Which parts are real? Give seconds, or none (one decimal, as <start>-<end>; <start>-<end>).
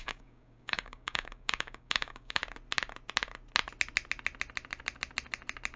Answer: 2.4-5.8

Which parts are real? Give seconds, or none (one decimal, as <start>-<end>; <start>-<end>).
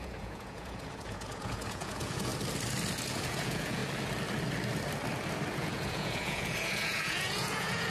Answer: 2.3-3.1; 3.8-5.5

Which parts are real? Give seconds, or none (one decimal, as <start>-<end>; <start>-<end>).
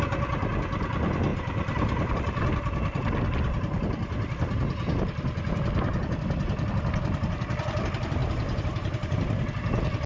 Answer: 0.0-1.3; 2.1-8.2; 9.5-10.1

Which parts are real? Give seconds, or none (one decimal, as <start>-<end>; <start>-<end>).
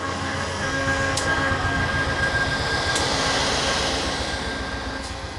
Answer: 1.8-5.0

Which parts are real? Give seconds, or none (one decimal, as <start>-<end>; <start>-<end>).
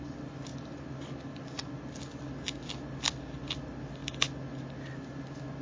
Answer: 0.0-5.6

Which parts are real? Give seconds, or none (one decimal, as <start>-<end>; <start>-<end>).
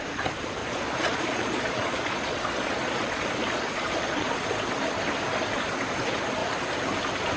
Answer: 0.0-0.6; 4.3-7.4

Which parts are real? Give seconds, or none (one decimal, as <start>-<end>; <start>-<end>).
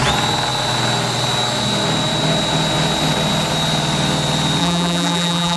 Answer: 0.0-4.6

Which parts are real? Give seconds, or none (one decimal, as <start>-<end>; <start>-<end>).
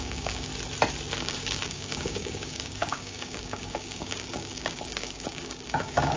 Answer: 0.5-1.2